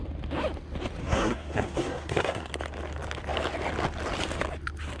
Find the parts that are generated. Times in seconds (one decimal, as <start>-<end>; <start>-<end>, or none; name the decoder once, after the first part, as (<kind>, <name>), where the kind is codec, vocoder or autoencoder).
1.0-2.5 (codec, SNAC)